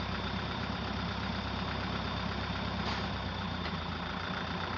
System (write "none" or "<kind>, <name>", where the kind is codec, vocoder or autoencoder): vocoder, BigVGAN v2